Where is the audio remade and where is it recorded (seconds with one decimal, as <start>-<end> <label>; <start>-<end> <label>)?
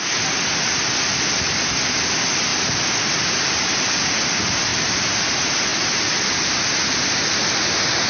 0.0-2.5 recorded; 2.5-3.7 remade; 3.7-4.7 recorded; 4.7-5.3 remade; 5.3-8.1 recorded